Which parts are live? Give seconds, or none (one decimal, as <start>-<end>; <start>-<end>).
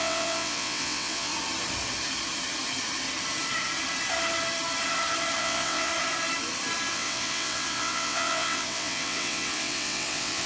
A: 1.3-5.4; 5.9-6.9